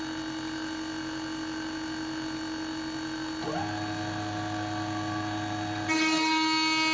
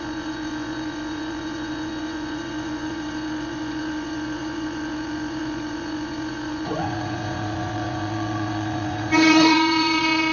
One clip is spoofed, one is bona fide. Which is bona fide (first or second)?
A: first